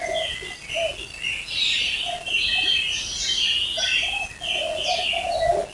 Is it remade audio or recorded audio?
recorded